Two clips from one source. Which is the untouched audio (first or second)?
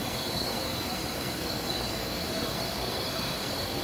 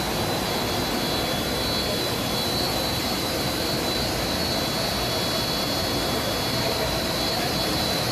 second